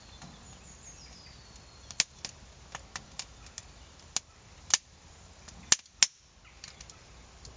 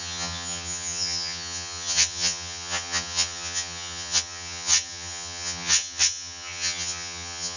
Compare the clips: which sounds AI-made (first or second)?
second